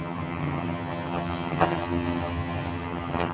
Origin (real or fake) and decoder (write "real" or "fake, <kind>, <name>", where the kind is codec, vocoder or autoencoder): fake, vocoder, HiFi-GAN